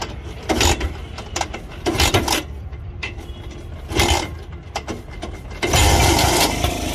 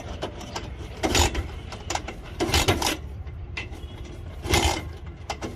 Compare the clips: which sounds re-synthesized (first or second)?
second